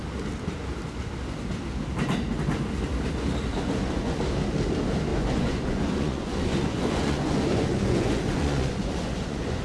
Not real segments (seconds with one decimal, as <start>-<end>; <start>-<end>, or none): 3.5-4.2; 5.1-9.6